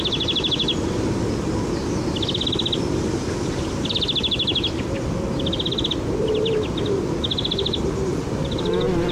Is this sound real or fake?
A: real